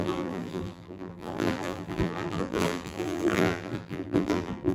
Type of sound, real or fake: fake